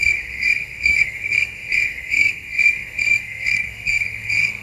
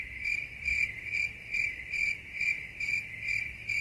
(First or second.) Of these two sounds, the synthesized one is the first